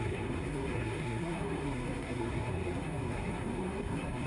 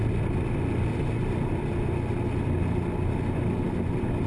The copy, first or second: first